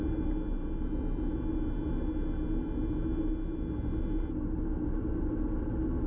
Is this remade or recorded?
recorded